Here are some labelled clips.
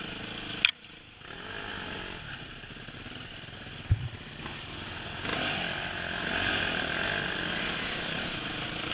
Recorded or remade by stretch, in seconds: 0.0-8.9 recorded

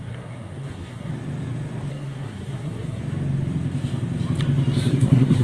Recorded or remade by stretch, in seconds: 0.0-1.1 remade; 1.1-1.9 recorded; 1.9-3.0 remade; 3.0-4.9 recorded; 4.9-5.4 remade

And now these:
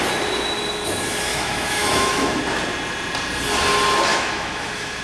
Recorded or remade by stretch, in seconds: 0.0-1.3 recorded; 1.3-2.4 remade; 2.4-4.1 recorded; 4.1-5.0 remade

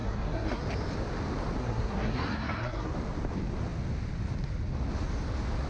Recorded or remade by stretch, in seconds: 0.0-0.6 remade; 0.6-1.6 recorded; 1.6-2.9 remade; 2.9-5.7 recorded

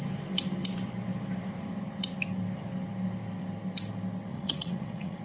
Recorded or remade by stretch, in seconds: 0.0-4.3 recorded; 4.3-5.2 remade